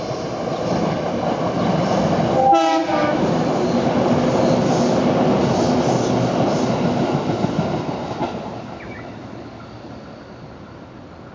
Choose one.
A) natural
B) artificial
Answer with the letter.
A